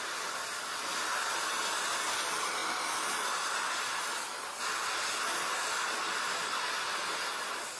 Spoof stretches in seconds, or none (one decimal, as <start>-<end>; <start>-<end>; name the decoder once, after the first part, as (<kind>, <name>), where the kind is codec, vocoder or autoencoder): none